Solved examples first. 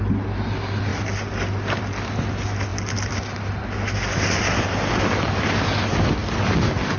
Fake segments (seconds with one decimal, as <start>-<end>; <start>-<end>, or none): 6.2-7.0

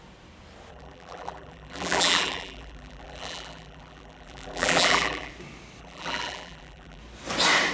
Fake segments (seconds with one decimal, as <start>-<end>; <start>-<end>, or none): 0.7-5.3; 5.8-7.0

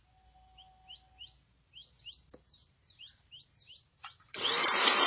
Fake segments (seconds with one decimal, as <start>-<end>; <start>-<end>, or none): 1.8-5.1

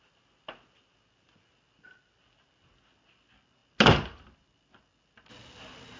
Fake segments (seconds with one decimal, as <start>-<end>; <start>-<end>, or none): none